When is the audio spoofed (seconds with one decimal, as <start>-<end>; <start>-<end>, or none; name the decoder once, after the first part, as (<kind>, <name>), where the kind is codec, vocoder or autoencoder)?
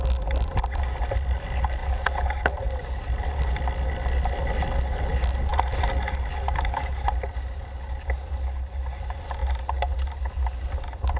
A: none